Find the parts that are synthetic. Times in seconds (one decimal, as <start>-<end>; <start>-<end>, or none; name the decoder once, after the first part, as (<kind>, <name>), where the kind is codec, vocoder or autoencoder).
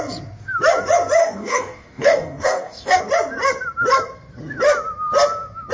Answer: 1.2-3.0 (codec, DAC)